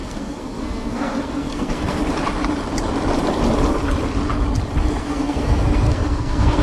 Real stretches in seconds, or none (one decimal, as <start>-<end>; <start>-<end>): 2.0-5.0

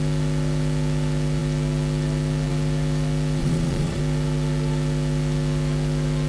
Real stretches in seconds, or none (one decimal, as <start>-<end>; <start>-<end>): 0.0-3.4; 4.0-6.3

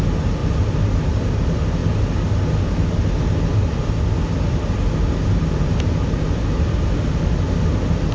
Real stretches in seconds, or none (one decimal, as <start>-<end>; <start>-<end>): 0.0-8.1

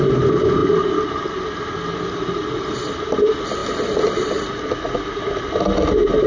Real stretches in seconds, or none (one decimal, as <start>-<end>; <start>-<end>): 0.0-6.3

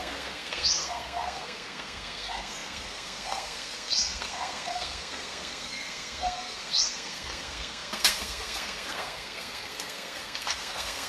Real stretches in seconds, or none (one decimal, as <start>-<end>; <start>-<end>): none